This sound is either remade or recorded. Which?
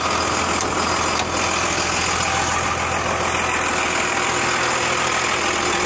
recorded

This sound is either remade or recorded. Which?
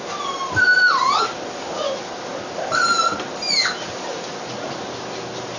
recorded